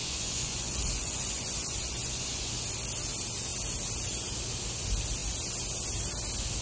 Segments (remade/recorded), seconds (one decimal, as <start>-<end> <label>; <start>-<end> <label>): 0.0-2.6 remade; 2.6-6.6 recorded